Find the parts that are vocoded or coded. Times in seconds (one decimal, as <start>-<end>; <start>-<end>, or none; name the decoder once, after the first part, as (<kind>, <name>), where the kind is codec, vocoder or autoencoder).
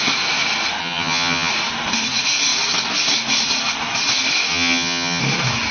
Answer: 0.8-1.5 (vocoder, HiFi-GAN); 4.5-5.2